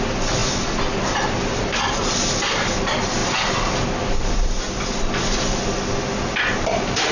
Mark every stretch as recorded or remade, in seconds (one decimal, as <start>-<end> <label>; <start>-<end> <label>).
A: 0.0-7.1 recorded